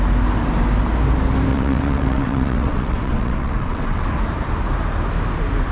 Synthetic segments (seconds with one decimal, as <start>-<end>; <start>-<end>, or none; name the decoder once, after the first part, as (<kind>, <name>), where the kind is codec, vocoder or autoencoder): 1.5-4.1 (vocoder, WaveNeXt)